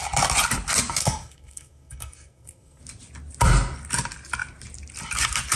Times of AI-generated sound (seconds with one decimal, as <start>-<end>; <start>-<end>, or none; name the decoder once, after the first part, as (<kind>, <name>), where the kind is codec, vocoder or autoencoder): 1.0-2.8 (codec, SNAC)